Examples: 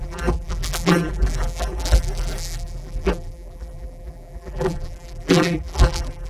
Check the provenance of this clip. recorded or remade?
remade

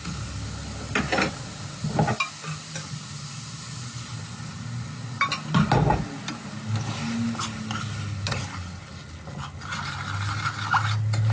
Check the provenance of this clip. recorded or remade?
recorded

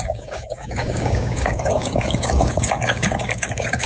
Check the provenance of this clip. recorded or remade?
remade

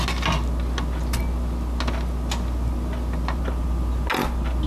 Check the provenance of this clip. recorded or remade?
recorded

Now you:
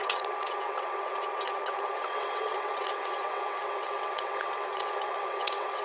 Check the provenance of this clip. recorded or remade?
remade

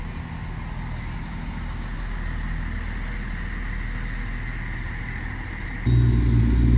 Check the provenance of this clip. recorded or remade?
recorded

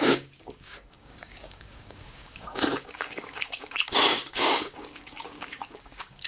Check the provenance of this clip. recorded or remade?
remade